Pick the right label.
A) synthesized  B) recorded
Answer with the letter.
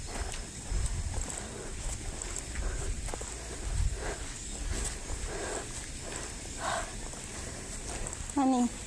B